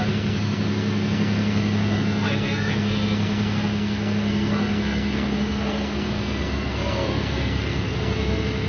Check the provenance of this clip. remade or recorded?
remade